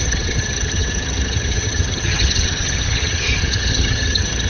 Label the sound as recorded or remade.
remade